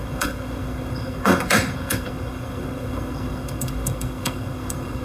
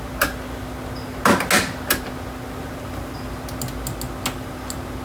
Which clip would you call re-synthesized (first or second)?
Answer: first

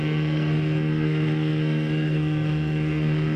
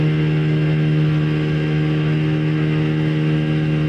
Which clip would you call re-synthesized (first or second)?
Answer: first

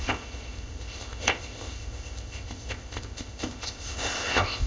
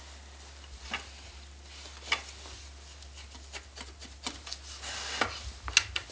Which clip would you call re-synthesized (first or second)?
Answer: first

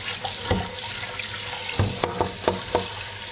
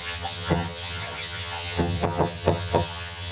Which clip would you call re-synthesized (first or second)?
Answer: second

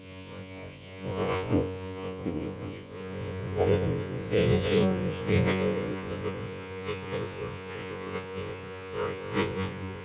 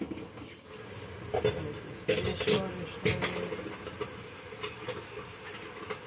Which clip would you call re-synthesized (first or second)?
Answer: first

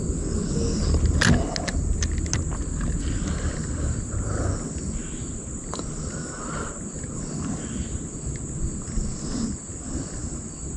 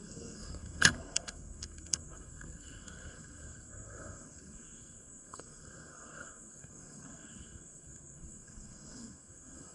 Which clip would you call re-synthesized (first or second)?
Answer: second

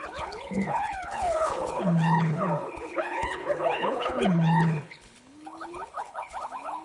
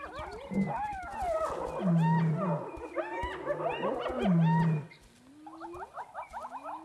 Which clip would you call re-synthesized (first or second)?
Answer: first